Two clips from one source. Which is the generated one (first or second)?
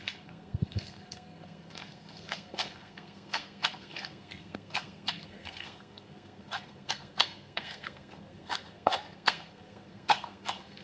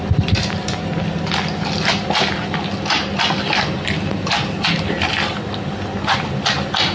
first